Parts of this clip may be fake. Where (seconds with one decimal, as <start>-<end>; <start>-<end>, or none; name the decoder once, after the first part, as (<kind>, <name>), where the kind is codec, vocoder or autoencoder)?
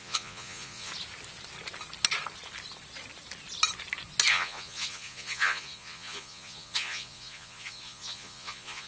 0.0-0.9 (vocoder, Vocos); 4.3-8.9